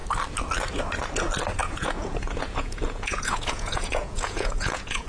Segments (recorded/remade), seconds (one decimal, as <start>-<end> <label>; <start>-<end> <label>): 0.0-1.6 recorded; 1.6-5.1 remade